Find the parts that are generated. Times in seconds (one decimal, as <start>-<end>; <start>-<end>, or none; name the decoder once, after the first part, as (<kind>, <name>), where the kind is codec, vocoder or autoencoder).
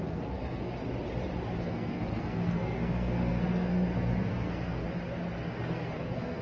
0.0-0.8 (codec, SNAC); 1.6-4.8; 5.6-6.4